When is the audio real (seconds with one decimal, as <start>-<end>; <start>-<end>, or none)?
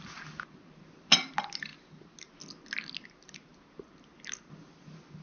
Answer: 0.0-5.2